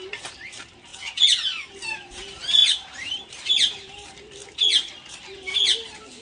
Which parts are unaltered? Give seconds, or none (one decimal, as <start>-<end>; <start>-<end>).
0.9-1.9; 4.4-5.1